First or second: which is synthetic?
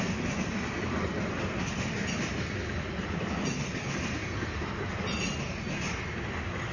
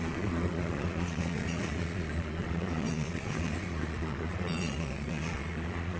second